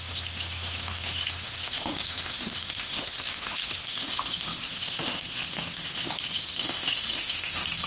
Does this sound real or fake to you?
fake